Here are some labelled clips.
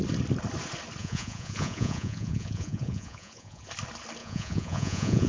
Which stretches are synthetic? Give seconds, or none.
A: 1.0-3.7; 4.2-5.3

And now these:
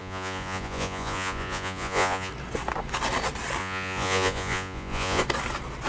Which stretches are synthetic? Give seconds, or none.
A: 0.0-2.3; 3.6-5.2

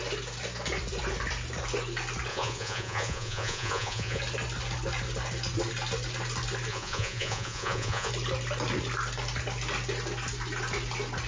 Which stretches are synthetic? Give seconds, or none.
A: 2.3-4.2; 6.7-8.1